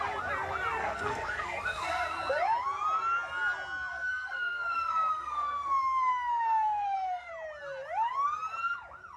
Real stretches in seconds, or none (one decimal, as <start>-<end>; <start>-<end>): 0.0-0.8; 2.2-3.9; 7.3-9.2